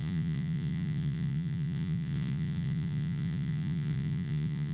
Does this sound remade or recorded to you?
remade